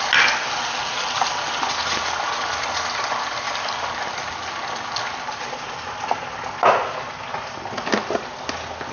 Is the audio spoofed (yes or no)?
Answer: no